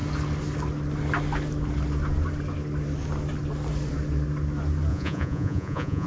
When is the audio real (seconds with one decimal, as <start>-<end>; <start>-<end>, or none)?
0.0-4.9